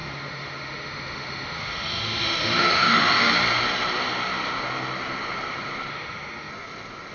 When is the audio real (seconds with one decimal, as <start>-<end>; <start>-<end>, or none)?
3.3-5.9; 6.5-7.1